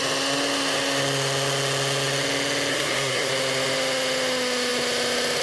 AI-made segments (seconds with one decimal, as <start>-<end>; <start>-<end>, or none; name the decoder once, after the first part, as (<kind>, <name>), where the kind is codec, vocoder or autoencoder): 2.7-3.3 (codec, SNAC)